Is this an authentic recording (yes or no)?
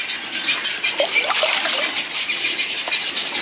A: yes